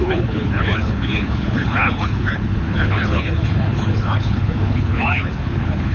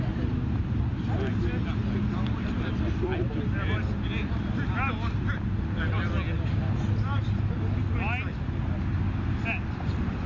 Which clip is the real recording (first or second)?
second